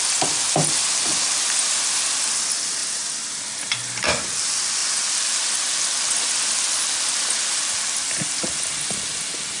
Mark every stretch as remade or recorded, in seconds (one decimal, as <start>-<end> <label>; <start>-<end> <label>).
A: 0.0-9.6 recorded